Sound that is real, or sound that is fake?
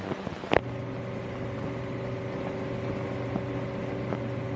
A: real